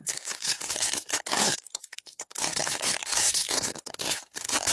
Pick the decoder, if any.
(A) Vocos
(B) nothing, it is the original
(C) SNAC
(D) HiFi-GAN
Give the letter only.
C